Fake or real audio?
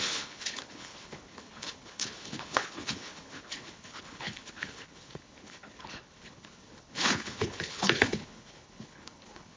fake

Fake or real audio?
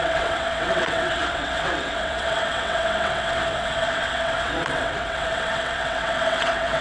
fake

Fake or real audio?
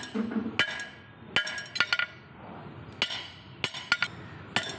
real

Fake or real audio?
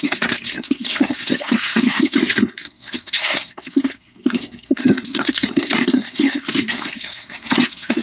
fake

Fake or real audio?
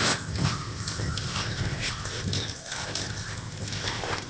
fake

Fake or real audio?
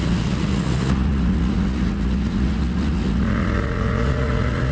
fake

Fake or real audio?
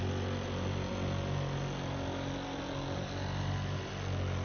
real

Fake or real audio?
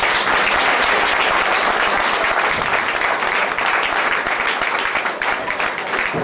real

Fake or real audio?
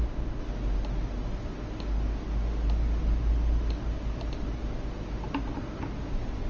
real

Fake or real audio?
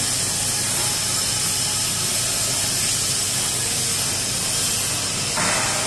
real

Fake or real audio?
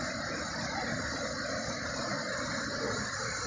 real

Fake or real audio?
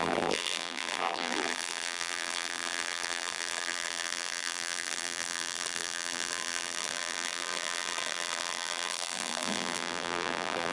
fake